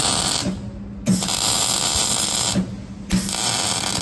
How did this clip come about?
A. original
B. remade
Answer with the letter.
A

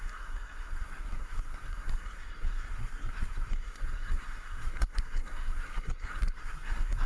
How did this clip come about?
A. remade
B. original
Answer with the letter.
A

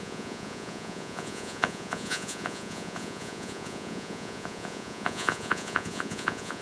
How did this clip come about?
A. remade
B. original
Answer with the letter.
A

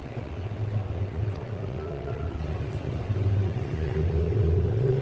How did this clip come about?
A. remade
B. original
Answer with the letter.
A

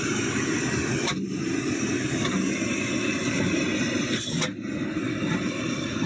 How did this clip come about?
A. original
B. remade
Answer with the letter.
B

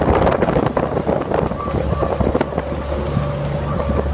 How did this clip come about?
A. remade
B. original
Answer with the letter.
B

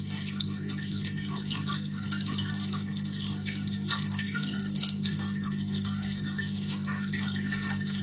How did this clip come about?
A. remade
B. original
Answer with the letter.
A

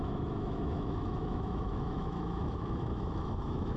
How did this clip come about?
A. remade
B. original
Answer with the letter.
A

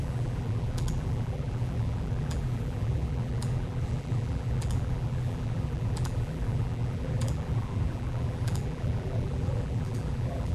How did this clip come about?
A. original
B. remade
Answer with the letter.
B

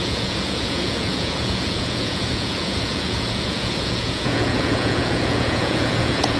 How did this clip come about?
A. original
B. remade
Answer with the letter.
B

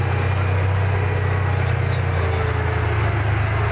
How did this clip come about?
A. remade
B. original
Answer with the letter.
B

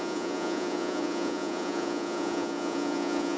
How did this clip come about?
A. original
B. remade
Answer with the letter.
B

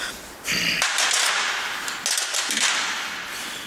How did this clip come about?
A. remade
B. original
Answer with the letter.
B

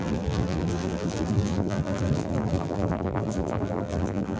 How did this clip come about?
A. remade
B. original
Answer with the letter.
A